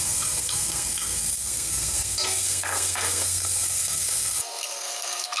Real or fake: fake